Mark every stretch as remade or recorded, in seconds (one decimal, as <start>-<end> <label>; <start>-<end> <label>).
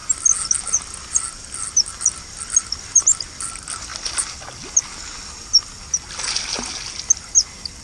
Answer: 0.0-7.8 recorded